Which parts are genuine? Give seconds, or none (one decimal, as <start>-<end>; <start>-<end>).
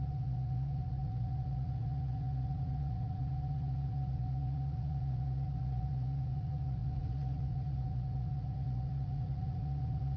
none